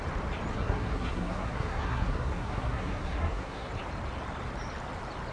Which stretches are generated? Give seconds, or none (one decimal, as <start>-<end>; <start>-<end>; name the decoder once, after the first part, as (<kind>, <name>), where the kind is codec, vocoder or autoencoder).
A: 0.5-3.7 (codec, SNAC)